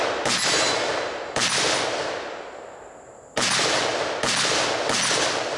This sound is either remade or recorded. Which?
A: recorded